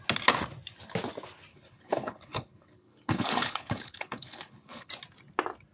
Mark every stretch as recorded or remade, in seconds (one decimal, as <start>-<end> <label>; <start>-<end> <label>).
0.0-1.5 recorded; 1.5-4.9 remade; 4.9-5.7 recorded